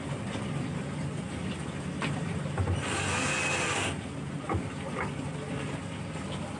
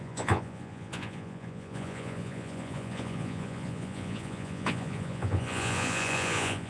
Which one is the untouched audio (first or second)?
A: first